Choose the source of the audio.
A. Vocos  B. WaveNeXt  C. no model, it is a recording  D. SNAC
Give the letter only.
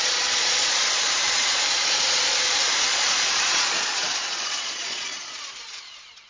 A